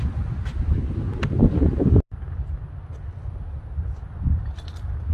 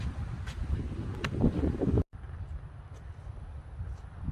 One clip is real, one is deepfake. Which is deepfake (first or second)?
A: second